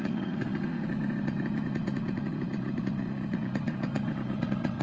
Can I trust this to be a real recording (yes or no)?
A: no